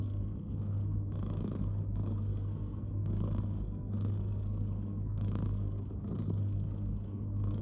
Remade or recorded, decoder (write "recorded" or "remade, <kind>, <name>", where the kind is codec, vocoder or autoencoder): remade, codec, SNAC